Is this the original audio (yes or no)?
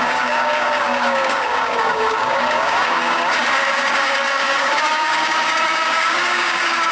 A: no